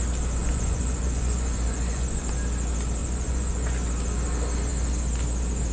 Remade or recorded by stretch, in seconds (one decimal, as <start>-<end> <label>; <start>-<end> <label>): 0.0-0.4 recorded; 0.4-2.3 remade; 2.3-3.0 recorded; 3.0-3.9 remade; 3.9-5.7 recorded